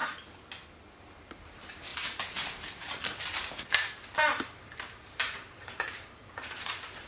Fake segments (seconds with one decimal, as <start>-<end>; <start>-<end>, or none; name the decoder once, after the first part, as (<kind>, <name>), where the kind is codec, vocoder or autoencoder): 1.0-7.1 (vocoder, BigVGAN v2)